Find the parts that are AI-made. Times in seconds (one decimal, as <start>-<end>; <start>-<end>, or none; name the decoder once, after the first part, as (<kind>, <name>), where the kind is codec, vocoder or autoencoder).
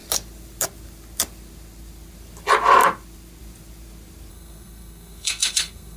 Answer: 4.3-6.0 (codec, SNAC)